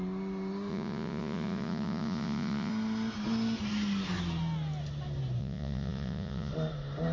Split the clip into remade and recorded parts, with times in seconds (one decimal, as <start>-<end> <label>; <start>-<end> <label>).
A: 0.0-0.7 recorded; 0.7-2.7 remade; 2.7-5.4 recorded; 5.4-6.5 remade; 6.5-7.1 recorded